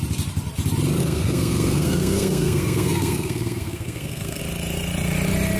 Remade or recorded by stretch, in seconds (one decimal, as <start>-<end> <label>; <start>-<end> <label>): 0.0-1.0 recorded; 1.0-4.4 remade; 4.4-5.6 recorded